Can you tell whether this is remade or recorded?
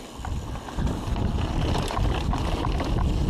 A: recorded